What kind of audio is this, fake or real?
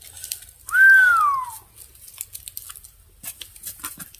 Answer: real